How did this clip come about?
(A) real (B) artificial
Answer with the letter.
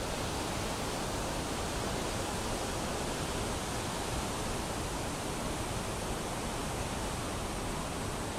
A